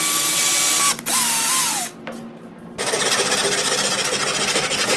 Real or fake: real